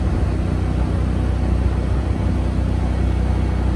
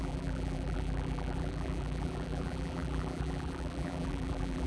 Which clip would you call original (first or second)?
first